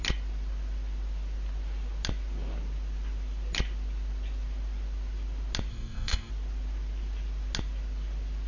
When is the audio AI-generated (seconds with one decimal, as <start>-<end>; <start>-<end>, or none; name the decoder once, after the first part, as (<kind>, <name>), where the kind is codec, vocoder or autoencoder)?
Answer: 5.7-6.3 (codec, SNAC)